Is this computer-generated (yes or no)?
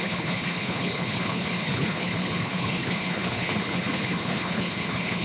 yes